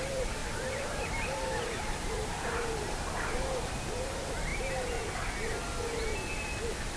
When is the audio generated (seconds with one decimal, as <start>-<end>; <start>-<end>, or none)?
0.4-4.0

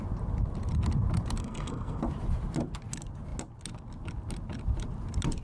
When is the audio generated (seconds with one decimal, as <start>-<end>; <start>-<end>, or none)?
1.4-2.0

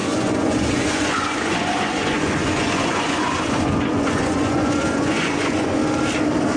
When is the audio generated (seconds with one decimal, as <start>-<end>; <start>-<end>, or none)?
0.0-5.8

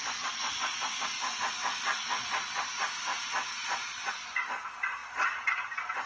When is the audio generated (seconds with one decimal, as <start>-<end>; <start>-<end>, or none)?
0.0-0.8; 1.9-2.6; 3.5-4.1; 5.0-5.5

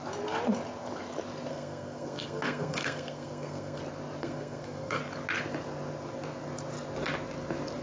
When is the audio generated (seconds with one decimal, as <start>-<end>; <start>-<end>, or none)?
1.5-3.8; 4.2-5.0

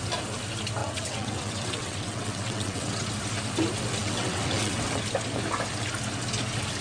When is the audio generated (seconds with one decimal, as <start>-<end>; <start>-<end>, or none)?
0.8-3.1; 4.0-4.8